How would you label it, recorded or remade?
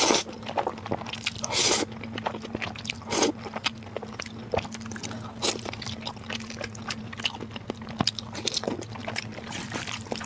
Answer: recorded